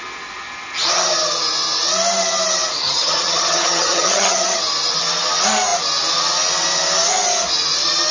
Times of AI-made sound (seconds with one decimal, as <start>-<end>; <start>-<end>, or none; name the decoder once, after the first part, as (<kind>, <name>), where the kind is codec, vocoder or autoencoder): 2.8-4.6 (vocoder, HiFi-GAN)